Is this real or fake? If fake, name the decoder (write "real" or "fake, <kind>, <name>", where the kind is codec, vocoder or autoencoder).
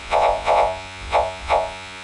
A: fake, vocoder, Vocos